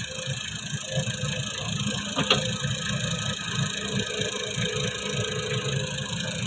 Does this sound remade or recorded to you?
recorded